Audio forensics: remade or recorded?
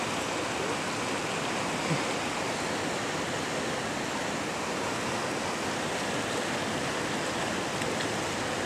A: recorded